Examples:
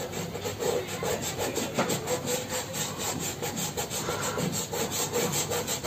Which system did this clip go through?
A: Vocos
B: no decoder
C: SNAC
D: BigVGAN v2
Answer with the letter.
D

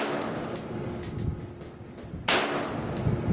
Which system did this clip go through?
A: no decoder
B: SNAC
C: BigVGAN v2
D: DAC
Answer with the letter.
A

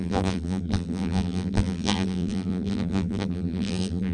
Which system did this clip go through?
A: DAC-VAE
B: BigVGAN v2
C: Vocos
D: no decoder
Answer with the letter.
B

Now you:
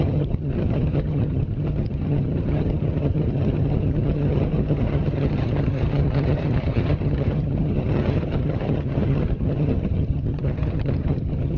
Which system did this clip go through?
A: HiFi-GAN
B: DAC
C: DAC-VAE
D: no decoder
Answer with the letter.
A